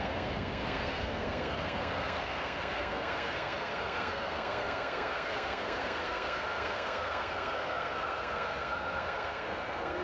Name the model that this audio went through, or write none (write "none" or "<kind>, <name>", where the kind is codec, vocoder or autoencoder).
codec, SNAC